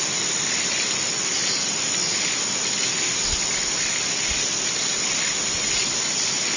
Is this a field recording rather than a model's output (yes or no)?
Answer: yes